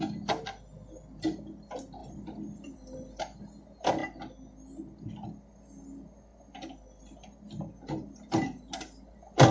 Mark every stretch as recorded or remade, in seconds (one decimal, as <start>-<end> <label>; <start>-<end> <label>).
0.0-2.0 recorded; 2.0-3.2 remade; 3.2-9.5 recorded